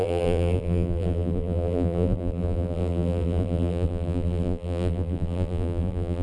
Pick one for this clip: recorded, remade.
remade